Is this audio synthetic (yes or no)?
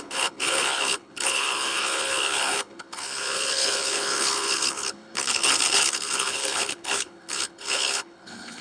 yes